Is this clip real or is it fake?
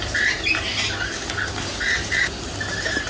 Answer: real